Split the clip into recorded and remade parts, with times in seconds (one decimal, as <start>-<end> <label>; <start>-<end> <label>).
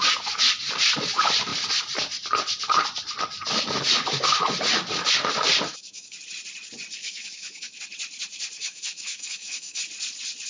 0.0-5.7 recorded; 5.7-6.2 remade; 6.2-7.0 recorded; 7.0-7.8 remade; 7.8-8.6 recorded; 8.6-9.8 remade; 9.8-10.5 recorded